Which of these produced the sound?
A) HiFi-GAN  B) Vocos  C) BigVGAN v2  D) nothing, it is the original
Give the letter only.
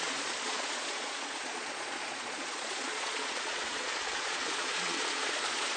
B